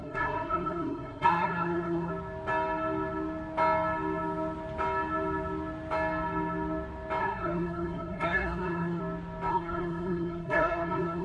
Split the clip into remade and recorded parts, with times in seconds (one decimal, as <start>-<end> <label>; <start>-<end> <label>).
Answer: 0.0-2.1 remade; 2.1-7.2 recorded; 7.2-9.0 remade; 9.0-9.5 recorded; 9.5-11.2 remade